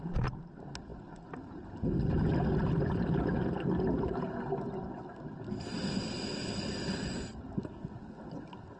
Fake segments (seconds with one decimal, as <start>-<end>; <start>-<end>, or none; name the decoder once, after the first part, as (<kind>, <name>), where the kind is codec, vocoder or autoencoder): none